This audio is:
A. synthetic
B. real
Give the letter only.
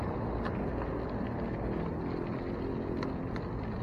B